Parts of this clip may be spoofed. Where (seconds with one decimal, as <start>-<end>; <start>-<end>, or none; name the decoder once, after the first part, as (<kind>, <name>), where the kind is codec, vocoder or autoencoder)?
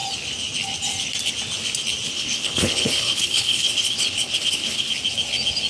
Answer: 2.1-4.9 (codec, HILCodec)